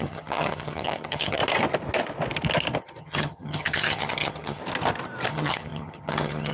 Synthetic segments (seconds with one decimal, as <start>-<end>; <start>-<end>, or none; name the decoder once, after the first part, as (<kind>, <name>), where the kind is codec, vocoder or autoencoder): 0.0-1.4 (vocoder, HiFi-GAN); 3.0-4.6; 5.3-6.5